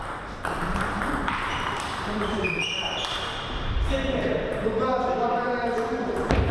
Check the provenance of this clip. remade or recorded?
remade